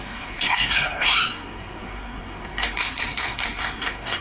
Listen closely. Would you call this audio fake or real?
fake